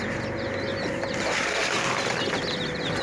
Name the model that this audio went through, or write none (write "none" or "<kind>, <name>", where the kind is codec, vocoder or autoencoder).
none